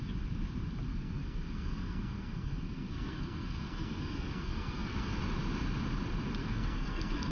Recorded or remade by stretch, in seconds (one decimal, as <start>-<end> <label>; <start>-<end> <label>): 0.0-0.9 recorded; 0.9-5.2 remade; 5.2-6.4 recorded; 6.4-7.3 remade